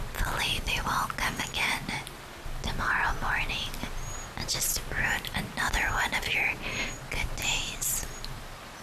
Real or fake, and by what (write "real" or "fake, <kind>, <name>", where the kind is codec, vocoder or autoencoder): real